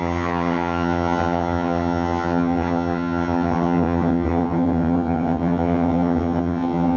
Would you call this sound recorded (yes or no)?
no